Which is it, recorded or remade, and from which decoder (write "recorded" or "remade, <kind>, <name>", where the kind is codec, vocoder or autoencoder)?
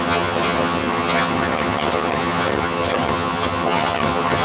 remade, vocoder, HiFi-GAN